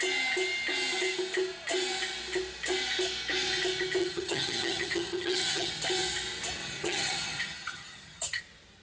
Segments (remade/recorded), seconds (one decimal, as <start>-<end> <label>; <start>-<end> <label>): 0.0-4.0 recorded; 4.0-5.7 remade; 5.7-6.6 recorded; 6.6-8.4 remade; 8.4-8.8 recorded